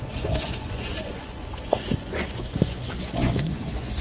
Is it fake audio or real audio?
fake